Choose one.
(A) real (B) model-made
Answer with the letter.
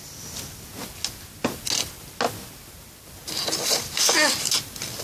A